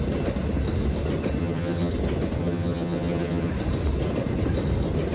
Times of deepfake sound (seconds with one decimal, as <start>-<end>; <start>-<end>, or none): 1.4-1.9; 2.4-3.5